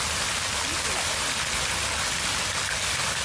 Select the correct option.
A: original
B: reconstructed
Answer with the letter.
A